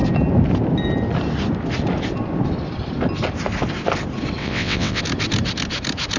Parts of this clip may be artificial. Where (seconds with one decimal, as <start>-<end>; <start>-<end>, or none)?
4.4-5.0